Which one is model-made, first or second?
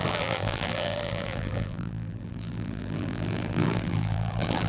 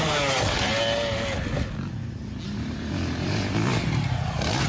first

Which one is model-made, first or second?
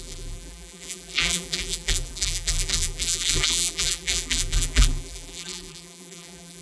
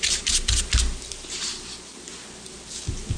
first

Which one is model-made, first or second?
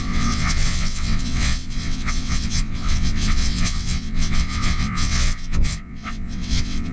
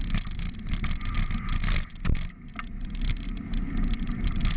first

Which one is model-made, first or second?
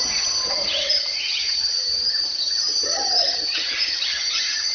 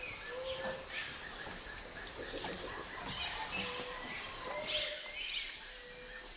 first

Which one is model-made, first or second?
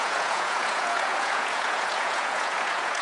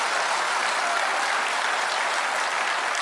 first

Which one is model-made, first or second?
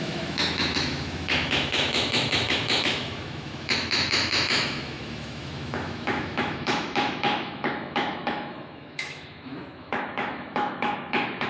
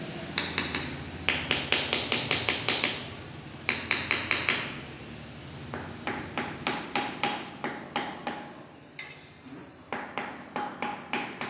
first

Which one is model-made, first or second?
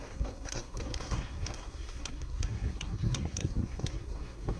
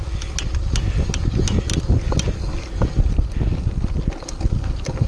first